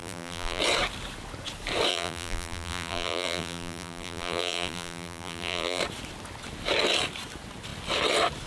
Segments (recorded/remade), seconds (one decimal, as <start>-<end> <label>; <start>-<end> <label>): 0.0-0.6 remade; 0.6-1.9 recorded; 1.9-5.8 remade; 5.8-8.5 recorded